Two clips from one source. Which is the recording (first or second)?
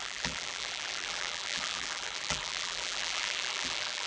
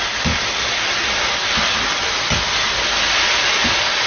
second